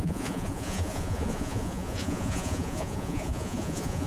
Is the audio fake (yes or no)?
yes